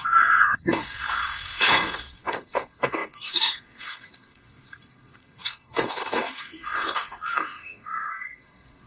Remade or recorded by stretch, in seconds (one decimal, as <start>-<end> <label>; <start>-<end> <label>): 0.0-8.9 remade